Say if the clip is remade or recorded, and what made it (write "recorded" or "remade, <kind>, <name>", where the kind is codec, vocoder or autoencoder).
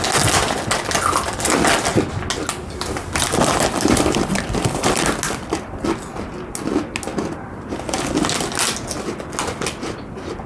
recorded